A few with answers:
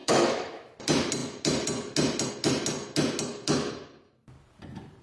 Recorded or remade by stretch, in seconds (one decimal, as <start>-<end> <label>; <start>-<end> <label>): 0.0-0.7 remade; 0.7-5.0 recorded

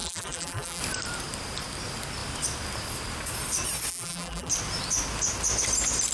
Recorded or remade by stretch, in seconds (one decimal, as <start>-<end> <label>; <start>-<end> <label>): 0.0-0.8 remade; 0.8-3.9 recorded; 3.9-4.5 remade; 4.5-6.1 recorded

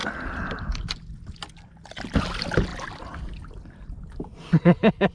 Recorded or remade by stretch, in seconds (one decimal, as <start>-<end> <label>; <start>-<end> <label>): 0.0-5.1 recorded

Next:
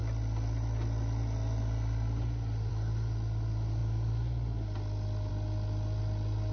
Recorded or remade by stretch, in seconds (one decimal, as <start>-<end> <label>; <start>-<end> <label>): 0.0-6.5 recorded

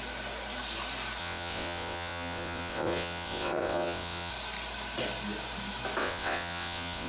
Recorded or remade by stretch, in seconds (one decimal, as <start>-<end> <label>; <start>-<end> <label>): 0.0-1.2 recorded; 1.2-4.3 remade; 4.3-6.0 recorded; 6.0-7.1 remade

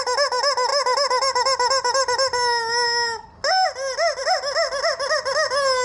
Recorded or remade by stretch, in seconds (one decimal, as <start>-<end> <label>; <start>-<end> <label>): 0.0-5.8 recorded